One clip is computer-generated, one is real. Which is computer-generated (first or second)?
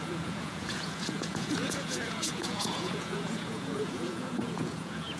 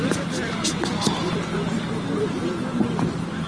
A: first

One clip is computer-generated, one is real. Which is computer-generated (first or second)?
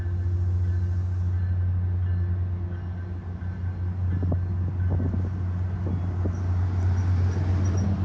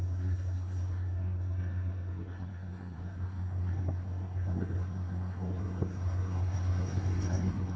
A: second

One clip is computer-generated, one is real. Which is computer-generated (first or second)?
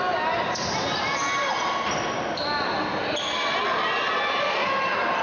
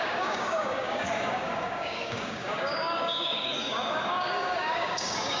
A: second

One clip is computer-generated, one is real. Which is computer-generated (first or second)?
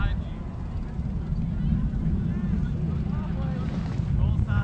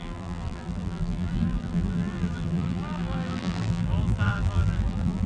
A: second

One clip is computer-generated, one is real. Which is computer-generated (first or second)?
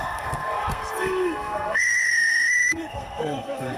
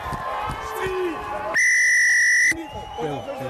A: first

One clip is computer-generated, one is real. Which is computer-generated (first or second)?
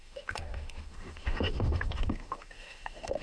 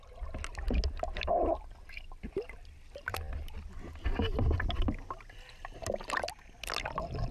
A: first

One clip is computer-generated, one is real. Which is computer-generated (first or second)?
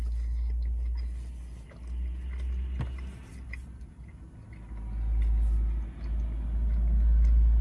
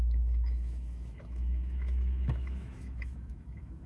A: second